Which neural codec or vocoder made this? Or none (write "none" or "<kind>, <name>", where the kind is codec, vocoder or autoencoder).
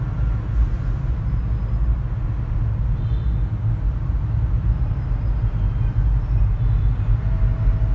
none